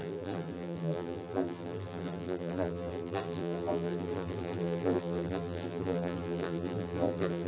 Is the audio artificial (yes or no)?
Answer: yes